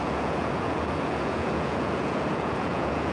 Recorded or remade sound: remade